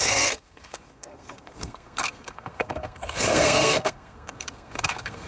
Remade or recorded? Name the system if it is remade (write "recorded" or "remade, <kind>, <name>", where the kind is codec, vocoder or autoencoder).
remade, codec, SNAC